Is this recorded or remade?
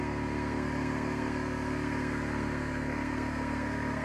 remade